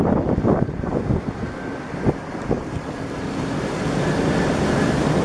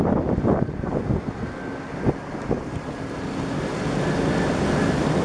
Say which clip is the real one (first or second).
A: second